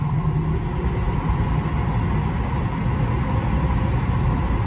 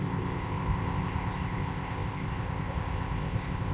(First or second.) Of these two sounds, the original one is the first